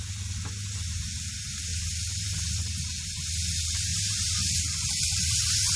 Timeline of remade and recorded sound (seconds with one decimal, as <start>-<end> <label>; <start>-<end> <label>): 0.0-5.8 recorded